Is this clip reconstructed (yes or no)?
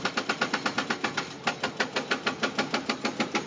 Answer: no